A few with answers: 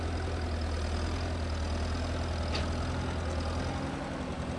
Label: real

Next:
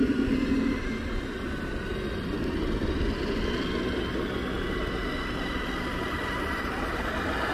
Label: real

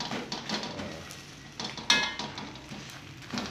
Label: real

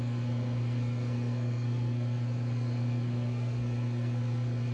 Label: fake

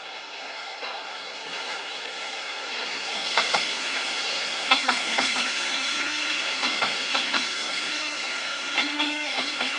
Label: fake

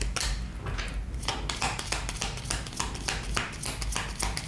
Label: real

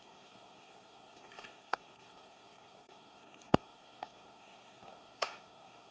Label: fake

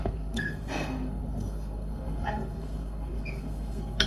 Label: fake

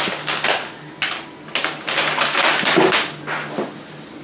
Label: real